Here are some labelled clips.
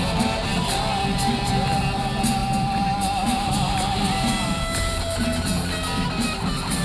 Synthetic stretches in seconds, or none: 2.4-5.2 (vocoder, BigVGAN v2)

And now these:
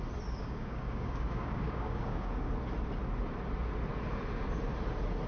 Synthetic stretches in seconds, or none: 0.4-2.5 (codec, DAC)

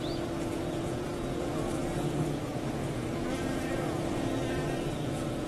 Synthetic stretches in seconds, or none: 0.0-5.5 (vocoder, Vocos)